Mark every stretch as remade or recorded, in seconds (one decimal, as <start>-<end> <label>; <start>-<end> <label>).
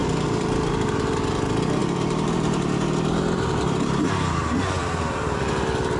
0.0-1.1 remade; 1.1-1.8 recorded; 1.8-5.4 remade; 5.4-6.0 recorded